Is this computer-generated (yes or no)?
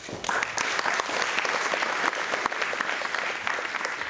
no